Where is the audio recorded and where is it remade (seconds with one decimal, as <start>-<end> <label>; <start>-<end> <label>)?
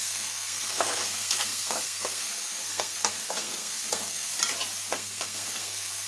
0.0-4.3 remade; 4.3-4.9 recorded; 4.9-6.1 remade